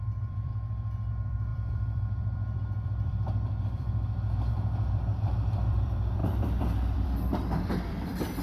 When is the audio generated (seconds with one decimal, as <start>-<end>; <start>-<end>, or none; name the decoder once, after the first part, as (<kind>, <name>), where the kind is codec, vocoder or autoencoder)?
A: 0.0-0.5 (vocoder, BigVGAN v2); 1.1-8.4